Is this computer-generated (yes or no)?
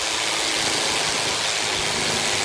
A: no